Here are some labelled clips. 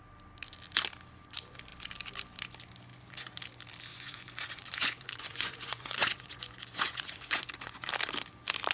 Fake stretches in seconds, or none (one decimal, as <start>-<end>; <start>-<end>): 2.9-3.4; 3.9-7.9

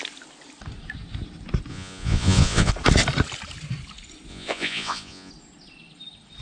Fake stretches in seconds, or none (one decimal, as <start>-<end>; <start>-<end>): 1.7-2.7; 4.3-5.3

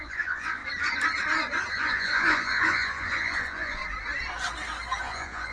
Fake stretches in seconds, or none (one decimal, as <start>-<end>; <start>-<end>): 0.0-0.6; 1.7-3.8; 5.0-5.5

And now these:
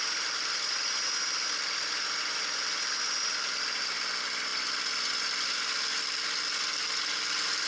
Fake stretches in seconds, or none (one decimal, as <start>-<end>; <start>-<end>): none